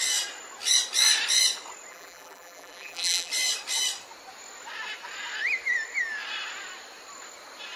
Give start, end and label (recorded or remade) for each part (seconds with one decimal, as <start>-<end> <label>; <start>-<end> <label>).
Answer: 0.0-1.9 recorded; 1.9-3.3 remade; 3.3-7.8 recorded